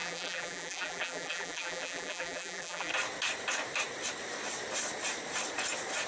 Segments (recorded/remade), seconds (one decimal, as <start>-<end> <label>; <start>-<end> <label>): 0.0-2.9 remade; 2.9-6.1 recorded